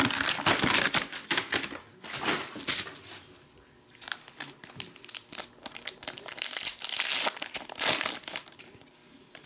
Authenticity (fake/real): real